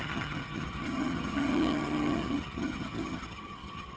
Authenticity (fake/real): fake